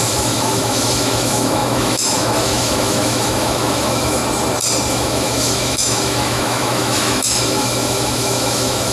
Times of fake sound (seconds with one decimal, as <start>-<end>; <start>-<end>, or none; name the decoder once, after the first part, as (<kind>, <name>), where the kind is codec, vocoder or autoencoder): 0.0-4.2 (autoencoder, DAC-VAE); 4.9-8.9